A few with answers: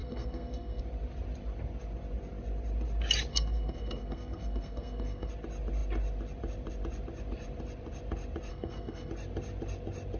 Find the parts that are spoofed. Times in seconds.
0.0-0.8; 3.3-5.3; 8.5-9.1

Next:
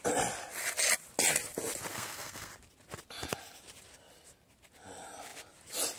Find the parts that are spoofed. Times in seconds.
1.9-2.5

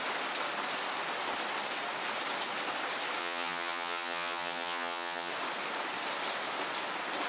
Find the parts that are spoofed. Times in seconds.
3.2-5.3

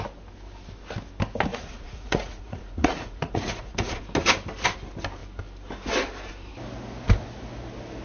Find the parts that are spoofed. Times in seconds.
1.5-4.0

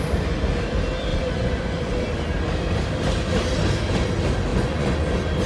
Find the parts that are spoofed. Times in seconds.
1.1-2.1; 4.5-5.0